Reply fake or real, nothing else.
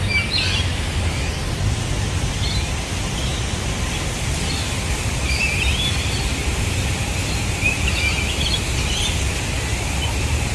real